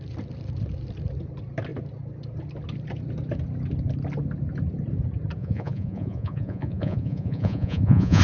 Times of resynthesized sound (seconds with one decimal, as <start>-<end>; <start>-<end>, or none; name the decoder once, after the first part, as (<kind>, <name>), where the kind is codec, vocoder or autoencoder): 5.4-8.2 (vocoder, Vocos)